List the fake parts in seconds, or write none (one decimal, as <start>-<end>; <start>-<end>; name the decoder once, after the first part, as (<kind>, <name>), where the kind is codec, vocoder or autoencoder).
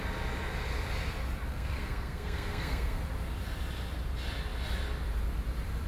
1.5-3.0 (codec, SNAC)